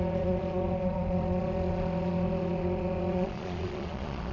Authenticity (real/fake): fake